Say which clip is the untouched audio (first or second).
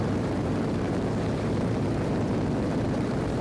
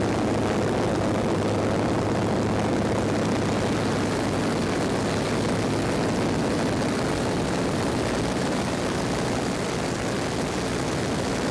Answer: second